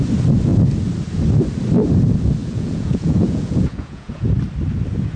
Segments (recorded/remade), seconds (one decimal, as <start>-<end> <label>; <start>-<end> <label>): 0.0-2.4 recorded; 2.4-4.3 remade; 4.3-5.2 recorded